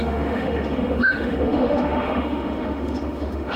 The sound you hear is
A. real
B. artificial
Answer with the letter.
B